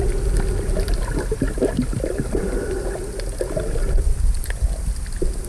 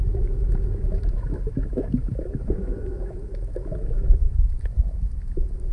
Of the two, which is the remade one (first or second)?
second